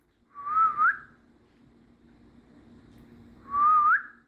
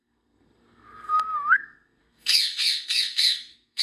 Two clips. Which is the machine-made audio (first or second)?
second